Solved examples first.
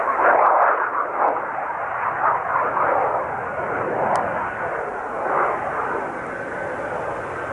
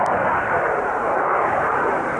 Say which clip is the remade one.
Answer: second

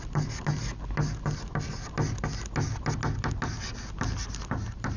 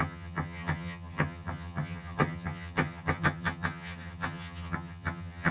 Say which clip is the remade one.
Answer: second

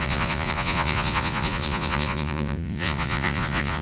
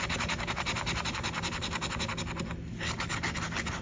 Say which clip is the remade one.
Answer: first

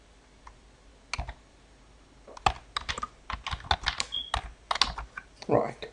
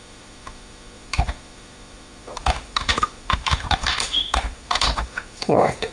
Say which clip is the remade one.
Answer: second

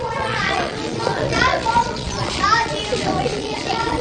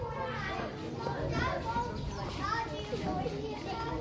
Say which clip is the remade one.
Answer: first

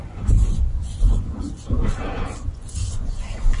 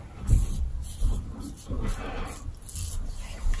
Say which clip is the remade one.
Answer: first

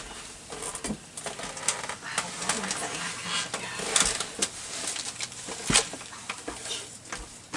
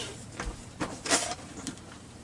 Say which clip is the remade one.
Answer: second